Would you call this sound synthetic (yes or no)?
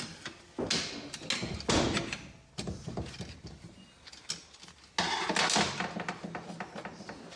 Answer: no